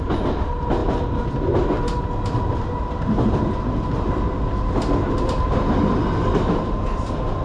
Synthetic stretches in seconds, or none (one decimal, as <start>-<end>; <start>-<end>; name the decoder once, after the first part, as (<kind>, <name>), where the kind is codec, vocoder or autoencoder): none